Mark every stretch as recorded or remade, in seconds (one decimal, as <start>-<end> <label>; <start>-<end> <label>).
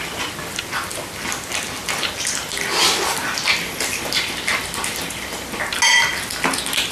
0.0-6.9 recorded